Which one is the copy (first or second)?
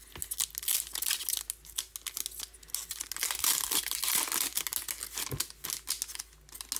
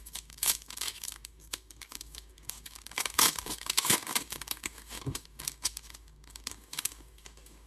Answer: second